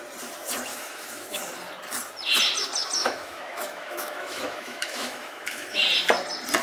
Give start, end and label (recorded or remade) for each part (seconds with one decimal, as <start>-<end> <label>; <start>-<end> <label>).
0.0-0.7 recorded; 0.7-1.4 remade; 1.4-3.0 recorded; 3.0-5.8 remade; 5.8-6.6 recorded